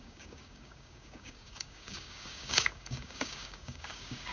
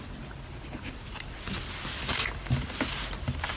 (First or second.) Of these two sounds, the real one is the second